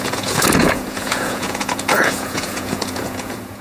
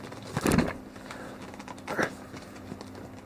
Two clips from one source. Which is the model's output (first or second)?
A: first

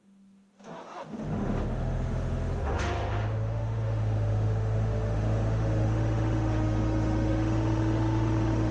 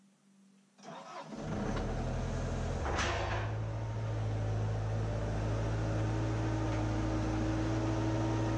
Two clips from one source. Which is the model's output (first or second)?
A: first